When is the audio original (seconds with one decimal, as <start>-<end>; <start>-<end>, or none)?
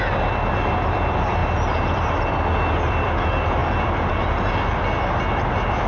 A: 0.0-5.9